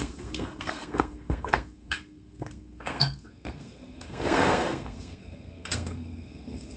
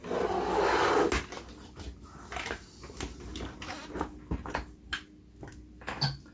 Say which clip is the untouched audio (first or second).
second